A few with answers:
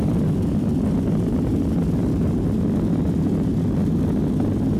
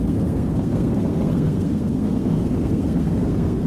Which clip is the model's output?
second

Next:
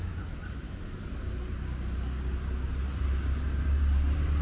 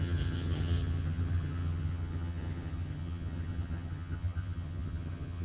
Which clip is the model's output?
second